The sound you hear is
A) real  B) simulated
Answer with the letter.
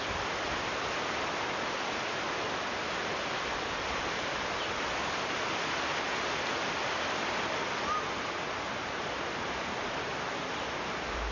A